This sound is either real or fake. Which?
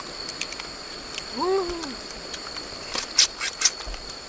real